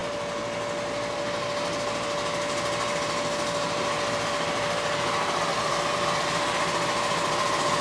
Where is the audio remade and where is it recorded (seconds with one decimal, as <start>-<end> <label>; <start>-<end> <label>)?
0.0-5.5 recorded; 5.5-6.2 remade; 6.2-7.8 recorded